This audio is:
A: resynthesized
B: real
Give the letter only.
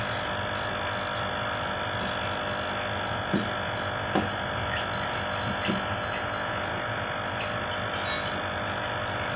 B